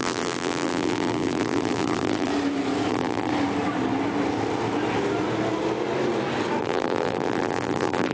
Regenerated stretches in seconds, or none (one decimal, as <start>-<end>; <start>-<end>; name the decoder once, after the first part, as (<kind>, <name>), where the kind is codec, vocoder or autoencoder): 0.0-2.3 (vocoder, BigVGAN v2); 2.9-3.3; 6.6-8.1

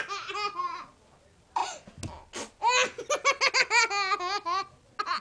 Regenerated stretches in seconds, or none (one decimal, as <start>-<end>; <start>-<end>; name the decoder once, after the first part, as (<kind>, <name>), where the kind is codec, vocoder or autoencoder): none

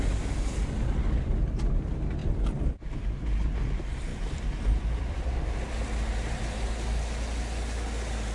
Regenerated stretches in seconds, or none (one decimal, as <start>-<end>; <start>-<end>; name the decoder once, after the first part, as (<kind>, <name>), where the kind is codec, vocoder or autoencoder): 2.2-3.2 (vocoder, BigVGAN v2); 4.1-5.3